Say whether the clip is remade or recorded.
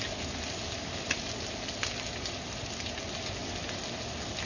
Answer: recorded